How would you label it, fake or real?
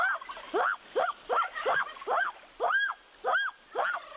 real